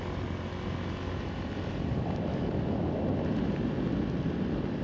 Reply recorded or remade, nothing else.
recorded